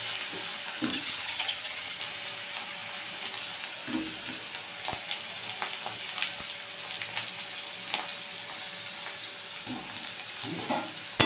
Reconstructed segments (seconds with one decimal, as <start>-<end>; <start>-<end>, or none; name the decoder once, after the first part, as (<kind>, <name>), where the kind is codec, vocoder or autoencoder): 0.9-2.0 (vocoder, HiFi-GAN)